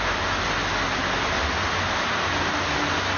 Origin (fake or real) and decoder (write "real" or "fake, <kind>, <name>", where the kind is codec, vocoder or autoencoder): real